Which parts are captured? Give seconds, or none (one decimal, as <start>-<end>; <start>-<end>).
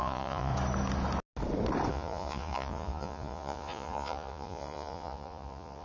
0.5-1.9